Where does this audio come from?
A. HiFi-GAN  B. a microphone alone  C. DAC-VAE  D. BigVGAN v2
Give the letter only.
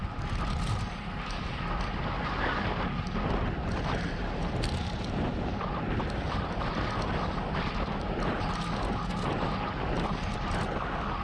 B